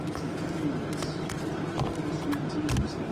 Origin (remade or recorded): recorded